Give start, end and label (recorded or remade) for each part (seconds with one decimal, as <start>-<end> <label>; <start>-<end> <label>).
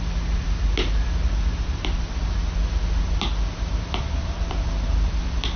0.0-2.6 remade; 2.6-3.2 recorded; 3.2-5.6 remade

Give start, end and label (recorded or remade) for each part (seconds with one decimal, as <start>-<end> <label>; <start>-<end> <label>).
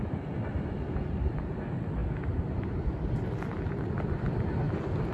0.0-5.1 recorded